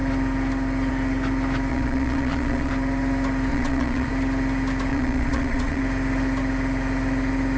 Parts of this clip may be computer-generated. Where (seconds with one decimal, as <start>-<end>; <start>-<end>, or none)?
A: 1.7-2.7; 3.5-4.1; 4.9-5.8